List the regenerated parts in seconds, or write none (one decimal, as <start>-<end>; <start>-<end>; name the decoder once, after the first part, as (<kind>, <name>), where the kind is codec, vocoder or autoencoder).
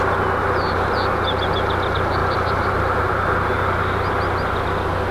2.2-3.4 (vocoder, BigVGAN v2)